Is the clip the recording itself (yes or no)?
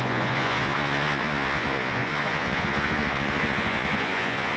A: no